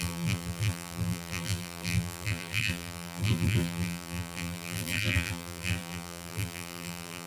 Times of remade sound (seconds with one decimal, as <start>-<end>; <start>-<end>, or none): 0.0-7.3